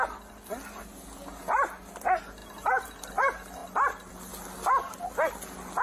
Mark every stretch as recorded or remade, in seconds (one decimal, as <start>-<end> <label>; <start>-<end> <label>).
0.0-5.8 recorded